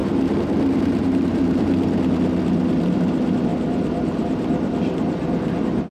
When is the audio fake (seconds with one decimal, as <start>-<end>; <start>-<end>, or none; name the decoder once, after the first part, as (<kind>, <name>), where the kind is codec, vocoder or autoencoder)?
0.0-2.0 (vocoder, BigVGAN v2)